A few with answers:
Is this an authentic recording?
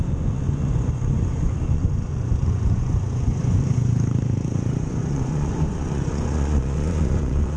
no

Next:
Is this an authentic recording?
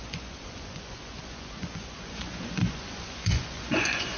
no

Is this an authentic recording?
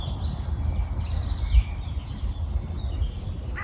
yes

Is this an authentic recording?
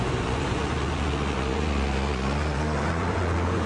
no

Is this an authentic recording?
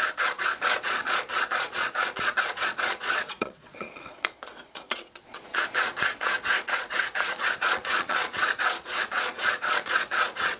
no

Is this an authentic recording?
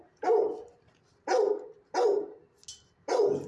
yes